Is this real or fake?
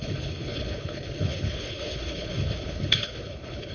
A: fake